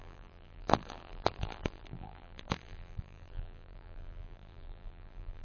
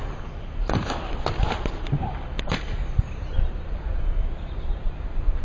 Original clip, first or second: second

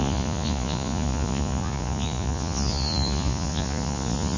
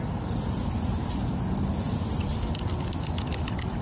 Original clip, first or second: second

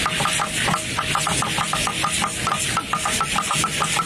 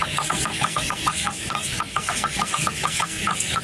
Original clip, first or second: first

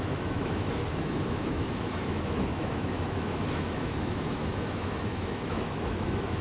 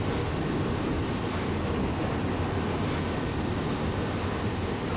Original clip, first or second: second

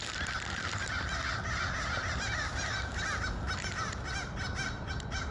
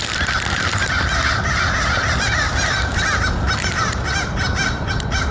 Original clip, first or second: first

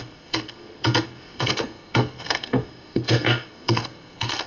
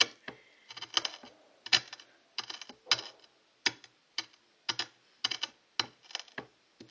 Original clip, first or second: second